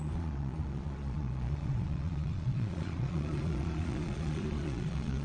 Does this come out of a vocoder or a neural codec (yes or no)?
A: yes